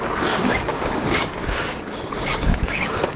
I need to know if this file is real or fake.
fake